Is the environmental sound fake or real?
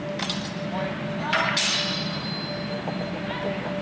real